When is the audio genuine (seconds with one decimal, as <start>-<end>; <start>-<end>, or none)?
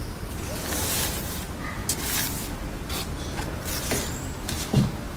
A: 1.8-5.2